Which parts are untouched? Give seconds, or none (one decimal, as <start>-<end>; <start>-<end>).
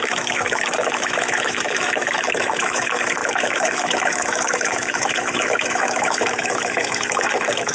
none